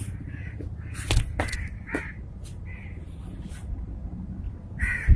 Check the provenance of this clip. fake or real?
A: real